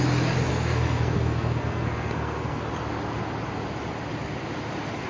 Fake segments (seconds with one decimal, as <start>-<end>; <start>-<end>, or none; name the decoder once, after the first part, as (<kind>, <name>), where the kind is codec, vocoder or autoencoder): 0.5-2.6 (codec, SNAC)